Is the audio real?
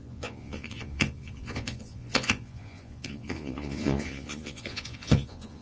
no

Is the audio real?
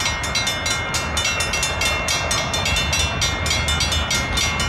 yes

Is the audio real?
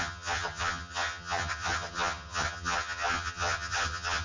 no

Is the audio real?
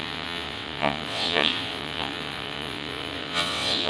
no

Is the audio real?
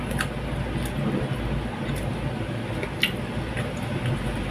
yes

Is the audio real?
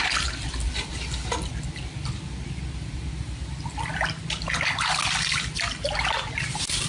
yes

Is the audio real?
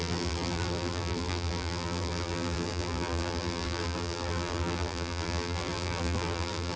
no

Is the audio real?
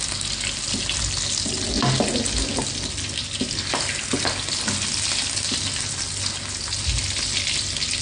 yes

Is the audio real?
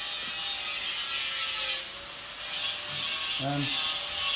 yes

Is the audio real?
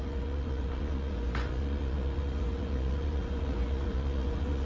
no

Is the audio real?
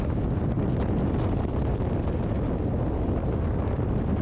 yes